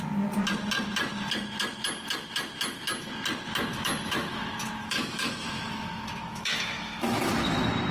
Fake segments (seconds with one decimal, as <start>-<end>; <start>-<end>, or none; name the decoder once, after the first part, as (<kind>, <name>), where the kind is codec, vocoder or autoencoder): 3.7-7.3 (autoencoder, DAC-VAE)